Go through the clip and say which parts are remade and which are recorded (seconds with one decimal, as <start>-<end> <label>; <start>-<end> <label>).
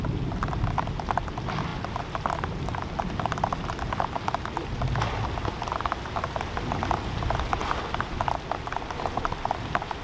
0.0-10.0 recorded